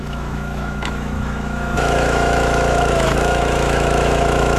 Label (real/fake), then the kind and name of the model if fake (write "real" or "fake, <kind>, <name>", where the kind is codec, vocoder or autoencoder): fake, autoencoder, DAC-VAE